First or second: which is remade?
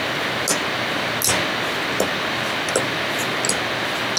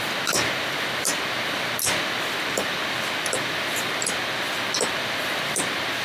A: second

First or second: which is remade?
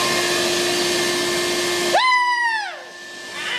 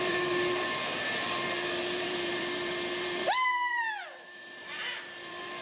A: second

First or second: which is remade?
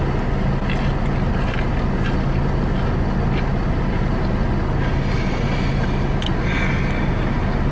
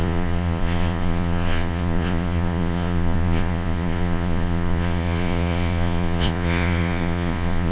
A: second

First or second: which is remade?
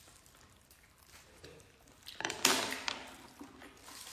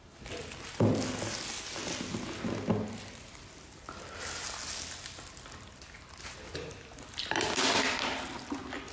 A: first